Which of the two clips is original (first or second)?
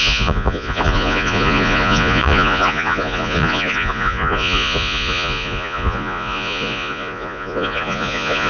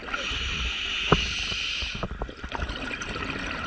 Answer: second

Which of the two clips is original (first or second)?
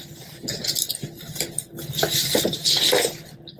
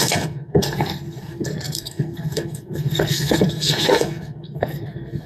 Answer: first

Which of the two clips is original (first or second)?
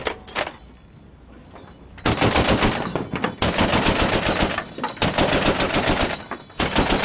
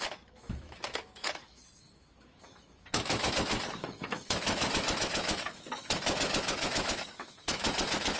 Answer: first